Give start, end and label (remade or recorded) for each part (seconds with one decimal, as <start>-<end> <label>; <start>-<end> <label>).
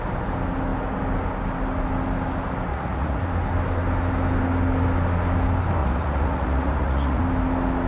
0.0-2.7 recorded; 2.7-3.2 remade; 3.2-5.8 recorded; 5.8-7.2 remade; 7.2-7.9 recorded